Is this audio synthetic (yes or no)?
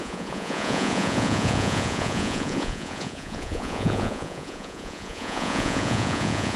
yes